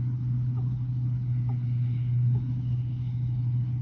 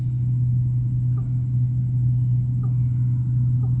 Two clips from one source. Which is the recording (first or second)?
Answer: second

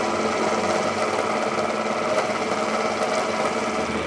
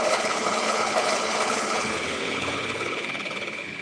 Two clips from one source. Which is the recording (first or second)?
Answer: first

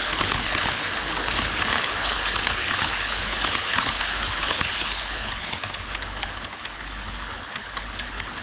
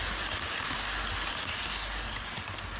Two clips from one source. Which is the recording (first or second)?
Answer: second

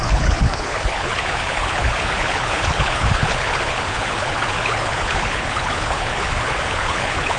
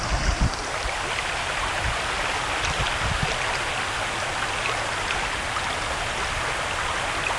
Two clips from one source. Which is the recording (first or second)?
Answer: second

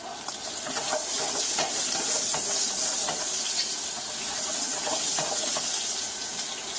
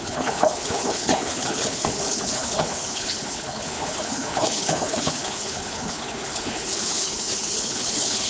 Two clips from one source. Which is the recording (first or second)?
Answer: first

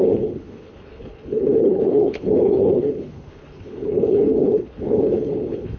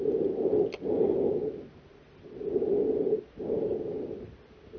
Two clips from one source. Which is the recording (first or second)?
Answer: second